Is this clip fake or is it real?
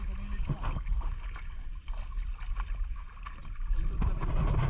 real